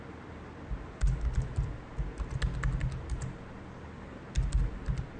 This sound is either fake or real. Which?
real